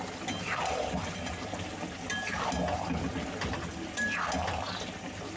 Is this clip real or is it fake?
real